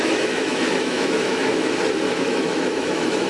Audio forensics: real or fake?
fake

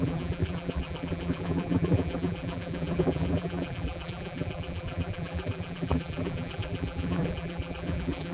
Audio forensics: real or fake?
fake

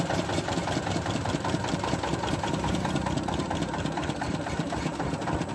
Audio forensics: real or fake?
fake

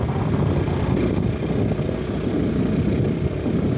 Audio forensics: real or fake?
real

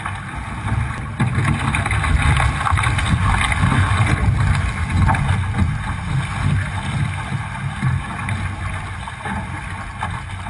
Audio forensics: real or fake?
real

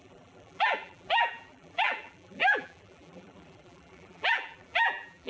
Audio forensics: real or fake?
fake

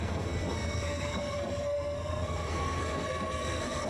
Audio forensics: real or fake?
fake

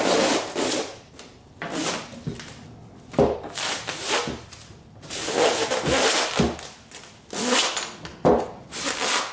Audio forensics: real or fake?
real